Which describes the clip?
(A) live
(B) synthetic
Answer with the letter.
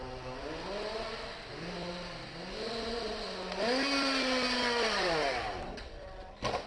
A